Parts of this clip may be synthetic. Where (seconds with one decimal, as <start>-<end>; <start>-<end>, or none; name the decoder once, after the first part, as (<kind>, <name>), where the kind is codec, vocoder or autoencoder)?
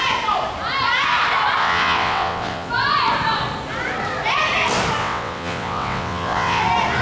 1.6-2.7 (vocoder, WaveNeXt); 5.0-6.6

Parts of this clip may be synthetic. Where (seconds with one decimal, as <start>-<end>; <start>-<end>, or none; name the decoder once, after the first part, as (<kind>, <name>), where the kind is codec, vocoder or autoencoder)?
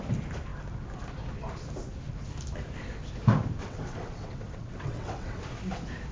3.6-5.4 (vocoder, WaveNeXt)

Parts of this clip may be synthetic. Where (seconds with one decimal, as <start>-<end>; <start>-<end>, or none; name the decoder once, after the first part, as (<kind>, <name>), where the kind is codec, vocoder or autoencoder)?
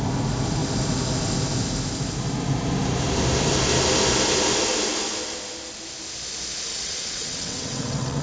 6.7-8.2 (vocoder, WaveNeXt)